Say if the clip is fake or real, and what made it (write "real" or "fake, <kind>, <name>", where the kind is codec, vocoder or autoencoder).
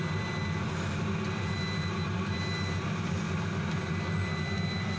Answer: real